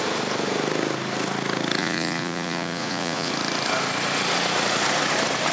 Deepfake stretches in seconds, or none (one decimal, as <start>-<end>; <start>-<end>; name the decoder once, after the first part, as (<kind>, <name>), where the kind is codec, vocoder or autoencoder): 1.8-3.3 (vocoder, Vocos)

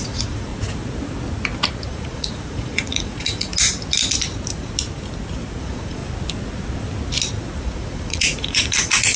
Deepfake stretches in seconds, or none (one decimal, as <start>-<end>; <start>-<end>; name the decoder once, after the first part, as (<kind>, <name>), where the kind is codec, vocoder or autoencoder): 0.0-0.5 (vocoder, Vocos); 1.9-3.5; 5.6-6.0; 7.6-9.2

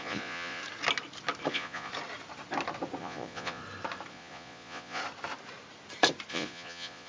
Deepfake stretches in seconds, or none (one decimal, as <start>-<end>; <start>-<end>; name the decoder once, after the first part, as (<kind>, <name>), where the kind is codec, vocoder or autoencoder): 0.0-0.6 (vocoder, Vocos); 1.5-1.9; 3.0-3.6; 4.1-5.0; 6.3-7.1

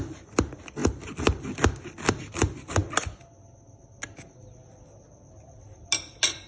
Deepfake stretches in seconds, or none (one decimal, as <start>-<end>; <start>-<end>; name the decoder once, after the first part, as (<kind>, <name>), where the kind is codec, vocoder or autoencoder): none

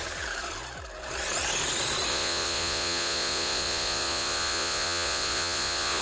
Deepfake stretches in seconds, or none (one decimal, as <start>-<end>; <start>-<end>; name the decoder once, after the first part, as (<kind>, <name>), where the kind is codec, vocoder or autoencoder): 2.1-6.0 (vocoder, Vocos)

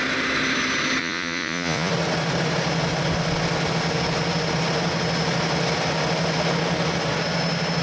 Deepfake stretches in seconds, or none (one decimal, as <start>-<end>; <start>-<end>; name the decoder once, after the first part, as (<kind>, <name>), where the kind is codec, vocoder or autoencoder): 1.0-1.9 (vocoder, Vocos)

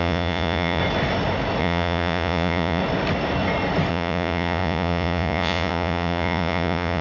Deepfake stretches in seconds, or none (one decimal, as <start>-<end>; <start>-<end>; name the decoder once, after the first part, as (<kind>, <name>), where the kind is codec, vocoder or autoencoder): 0.0-0.8 (vocoder, Vocos); 1.6-2.8; 3.9-7.0

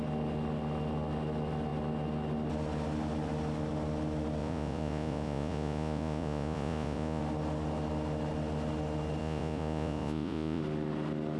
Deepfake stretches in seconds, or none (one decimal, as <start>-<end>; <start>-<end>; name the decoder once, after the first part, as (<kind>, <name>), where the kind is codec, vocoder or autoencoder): 4.4-7.2 (vocoder, Vocos); 9.2-10.6